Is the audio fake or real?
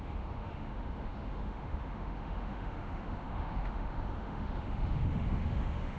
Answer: fake